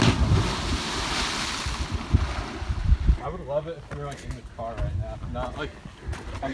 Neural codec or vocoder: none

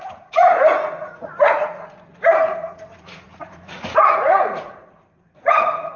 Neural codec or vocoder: vocoder, Vocos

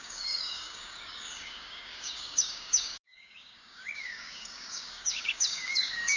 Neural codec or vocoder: codec, DAC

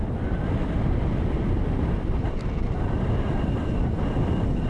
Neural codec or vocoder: none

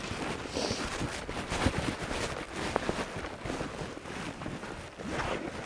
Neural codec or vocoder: none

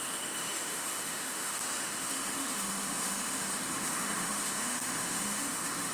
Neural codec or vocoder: autoencoder, DAC-VAE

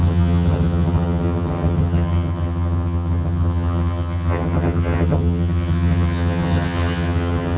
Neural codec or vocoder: vocoder, HiFi-GAN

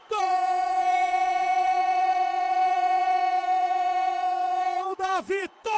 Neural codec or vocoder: vocoder, Vocos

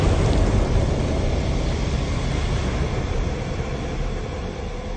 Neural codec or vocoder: none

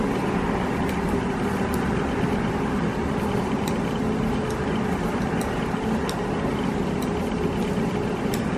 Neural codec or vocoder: none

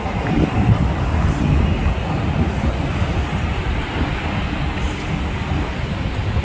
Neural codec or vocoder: none